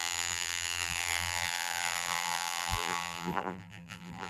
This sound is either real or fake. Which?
fake